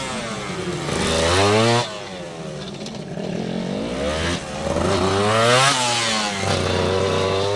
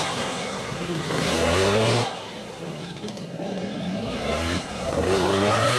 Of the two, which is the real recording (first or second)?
first